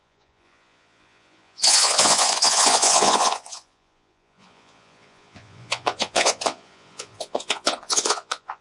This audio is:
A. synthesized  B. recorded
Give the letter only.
A